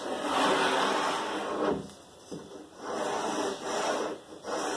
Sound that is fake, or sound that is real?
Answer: real